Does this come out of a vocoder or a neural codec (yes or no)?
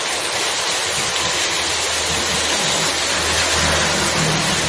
no